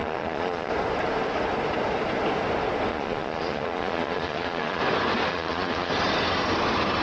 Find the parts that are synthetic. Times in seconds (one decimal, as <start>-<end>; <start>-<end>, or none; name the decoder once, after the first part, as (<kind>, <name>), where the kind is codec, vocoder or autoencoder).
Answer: 0.0-0.7 (vocoder, Vocos); 2.9-4.8; 5.3-5.9